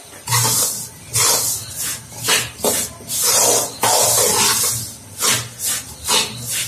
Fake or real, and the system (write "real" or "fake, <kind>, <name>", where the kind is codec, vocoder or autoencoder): real